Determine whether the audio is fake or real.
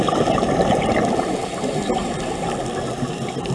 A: real